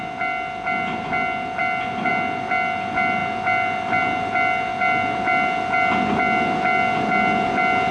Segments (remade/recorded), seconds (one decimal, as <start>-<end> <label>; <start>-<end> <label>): 0.0-7.9 recorded